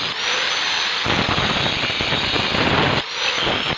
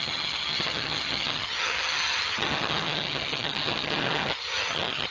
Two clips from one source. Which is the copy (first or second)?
second